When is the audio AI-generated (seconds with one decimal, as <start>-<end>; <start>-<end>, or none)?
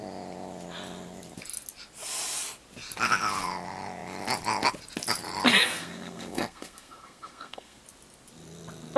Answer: 5.6-7.8